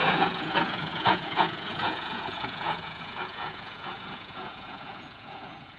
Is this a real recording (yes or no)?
no